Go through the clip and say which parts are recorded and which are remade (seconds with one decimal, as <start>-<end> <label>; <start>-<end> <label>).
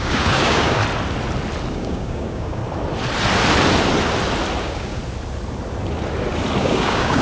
0.0-0.8 remade; 0.8-1.7 recorded; 1.7-2.6 remade; 2.6-4.6 recorded; 4.6-5.0 remade; 5.0-6.6 recorded; 6.6-7.2 remade